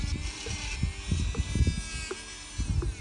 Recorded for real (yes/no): yes